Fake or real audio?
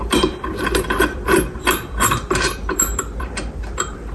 fake